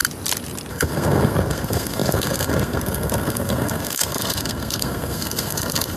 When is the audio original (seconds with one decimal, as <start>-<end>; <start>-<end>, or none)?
0.0-0.7